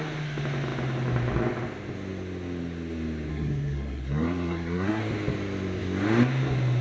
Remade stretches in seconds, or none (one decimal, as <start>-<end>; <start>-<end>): 3.3-5.0

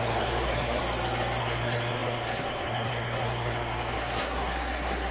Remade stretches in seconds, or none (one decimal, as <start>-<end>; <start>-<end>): 0.0-0.8; 1.4-5.1

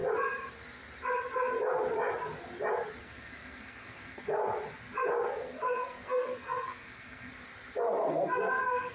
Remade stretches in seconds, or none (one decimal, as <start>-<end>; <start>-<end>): 3.0-4.4; 5.3-7.3; 8.1-8.9

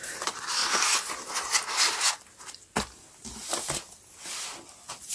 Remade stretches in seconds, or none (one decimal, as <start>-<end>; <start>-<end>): none

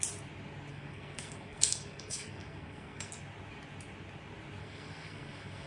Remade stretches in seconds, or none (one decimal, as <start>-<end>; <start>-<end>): 0.7-3.1; 4.6-5.7

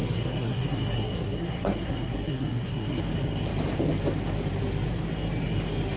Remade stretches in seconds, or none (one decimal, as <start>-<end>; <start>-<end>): 0.0-3.0

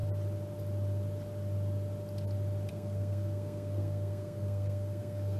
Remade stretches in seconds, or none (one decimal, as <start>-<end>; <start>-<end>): 2.7-5.4

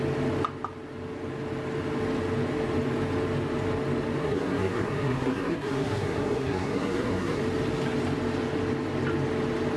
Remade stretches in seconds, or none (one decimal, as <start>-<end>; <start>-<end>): 4.2-7.4